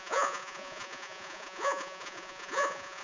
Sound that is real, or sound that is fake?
fake